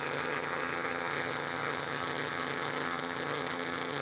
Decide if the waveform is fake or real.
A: fake